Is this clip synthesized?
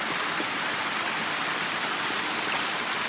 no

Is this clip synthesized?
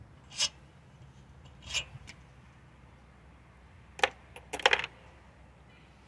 no